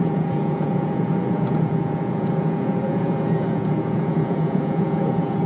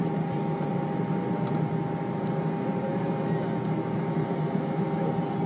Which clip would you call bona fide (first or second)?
second